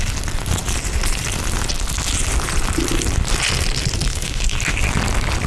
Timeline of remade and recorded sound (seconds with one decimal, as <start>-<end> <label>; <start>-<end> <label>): 0.0-4.1 recorded; 4.1-4.6 remade; 4.6-5.5 recorded